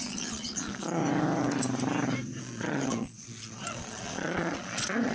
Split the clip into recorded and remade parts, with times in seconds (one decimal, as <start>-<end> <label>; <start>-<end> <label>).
0.0-1.0 remade; 1.0-2.4 recorded; 2.4-5.1 remade